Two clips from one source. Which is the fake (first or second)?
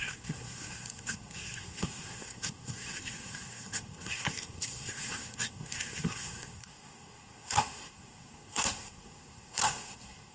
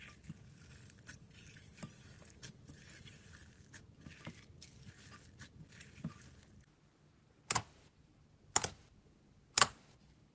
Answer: first